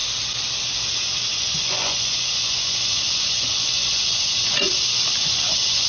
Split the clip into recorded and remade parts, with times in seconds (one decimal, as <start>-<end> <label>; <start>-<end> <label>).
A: 0.0-1.3 recorded; 1.3-4.8 remade; 4.8-5.2 recorded; 5.2-5.9 remade